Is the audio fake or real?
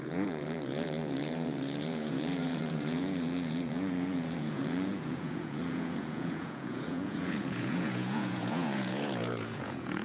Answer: fake